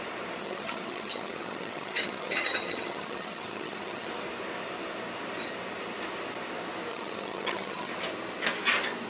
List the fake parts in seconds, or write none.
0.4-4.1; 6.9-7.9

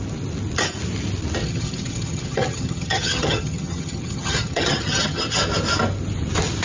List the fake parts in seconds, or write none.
1.4-5.4

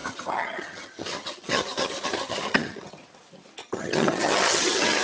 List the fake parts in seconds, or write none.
0.0-3.0; 3.6-5.0

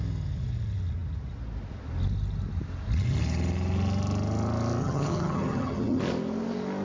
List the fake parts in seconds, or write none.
4.8-6.0

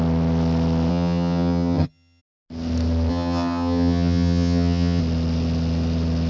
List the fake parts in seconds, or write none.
0.9-2.2; 3.1-5.0

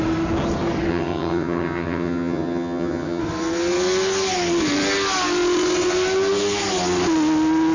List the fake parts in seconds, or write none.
0.9-3.2

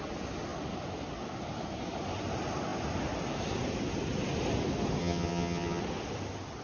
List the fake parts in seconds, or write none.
5.0-5.8